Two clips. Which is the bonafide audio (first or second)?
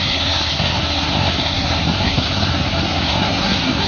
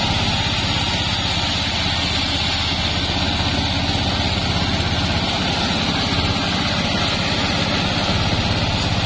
second